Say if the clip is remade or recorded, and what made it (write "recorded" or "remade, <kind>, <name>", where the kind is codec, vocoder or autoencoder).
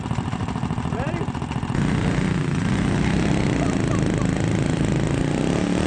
recorded